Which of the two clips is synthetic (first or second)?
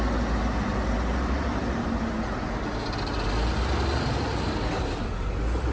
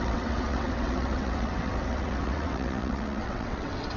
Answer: second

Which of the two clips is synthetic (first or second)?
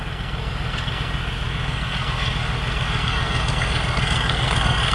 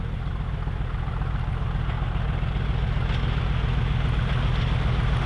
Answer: first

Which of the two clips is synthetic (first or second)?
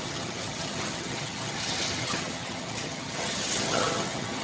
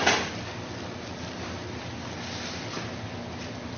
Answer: first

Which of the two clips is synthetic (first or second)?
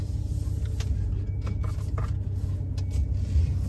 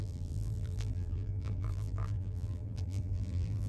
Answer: second